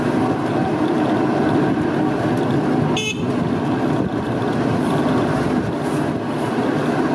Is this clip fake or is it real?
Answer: real